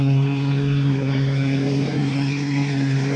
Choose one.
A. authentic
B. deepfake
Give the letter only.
B